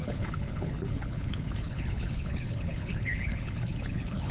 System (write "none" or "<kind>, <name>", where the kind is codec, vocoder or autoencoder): codec, HILCodec